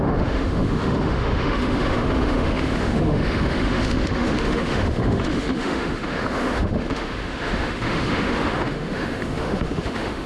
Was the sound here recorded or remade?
remade